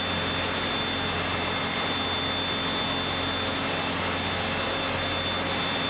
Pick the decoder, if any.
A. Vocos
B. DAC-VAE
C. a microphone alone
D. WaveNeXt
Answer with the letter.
C